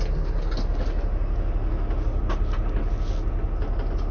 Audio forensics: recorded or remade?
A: recorded